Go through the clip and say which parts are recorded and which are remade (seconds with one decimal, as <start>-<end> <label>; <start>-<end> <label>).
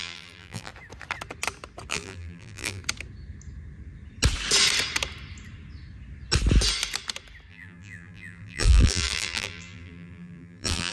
0.0-0.7 remade; 0.7-1.9 recorded; 1.9-2.8 remade; 2.8-7.5 recorded; 7.5-10.9 remade